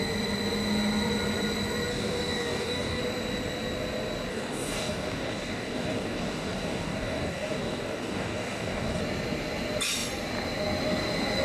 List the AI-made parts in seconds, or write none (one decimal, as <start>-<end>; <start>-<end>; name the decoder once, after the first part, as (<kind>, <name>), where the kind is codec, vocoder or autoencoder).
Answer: 1.9-3.0 (codec, DAC); 4.3-9.0